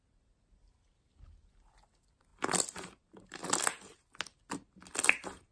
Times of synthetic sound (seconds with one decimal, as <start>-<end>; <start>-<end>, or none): none